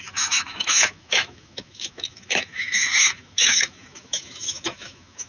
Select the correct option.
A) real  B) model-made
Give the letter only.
B